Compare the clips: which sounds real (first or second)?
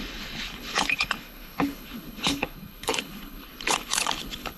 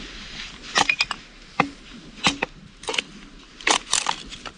second